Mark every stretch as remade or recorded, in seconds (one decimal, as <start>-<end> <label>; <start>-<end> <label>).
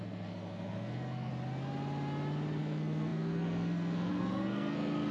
0.0-1.3 remade; 1.3-2.6 recorded; 2.6-5.1 remade